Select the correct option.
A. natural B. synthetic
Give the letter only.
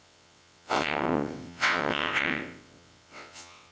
B